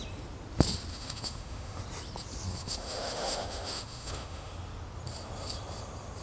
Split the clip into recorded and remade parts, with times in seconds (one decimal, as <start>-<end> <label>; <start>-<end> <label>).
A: 0.0-0.9 recorded; 0.9-1.8 remade; 1.8-2.6 recorded; 2.6-4.5 remade; 4.5-6.2 recorded